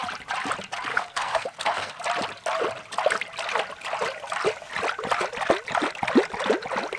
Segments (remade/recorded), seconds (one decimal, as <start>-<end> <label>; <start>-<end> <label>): 0.0-0.9 recorded; 0.9-2.0 remade; 2.0-7.0 recorded